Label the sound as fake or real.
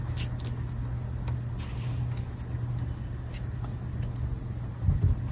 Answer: real